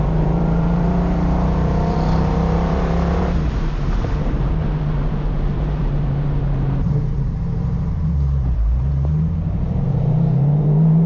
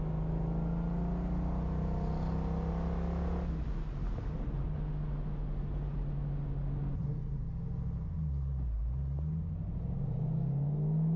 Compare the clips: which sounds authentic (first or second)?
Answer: second